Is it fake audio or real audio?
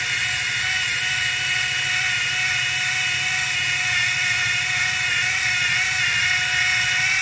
real